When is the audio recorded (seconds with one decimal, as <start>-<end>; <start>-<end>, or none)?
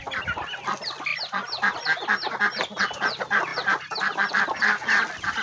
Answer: 0.0-5.4